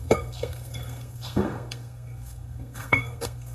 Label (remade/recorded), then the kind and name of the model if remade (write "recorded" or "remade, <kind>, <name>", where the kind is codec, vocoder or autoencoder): remade, codec, SNAC